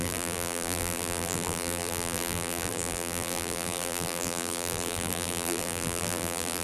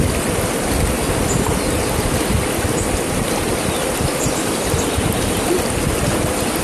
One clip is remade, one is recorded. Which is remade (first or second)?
first